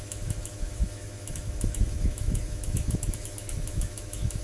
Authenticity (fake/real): fake